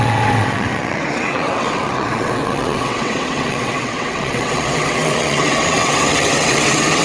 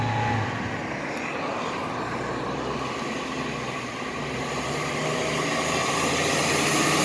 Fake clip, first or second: first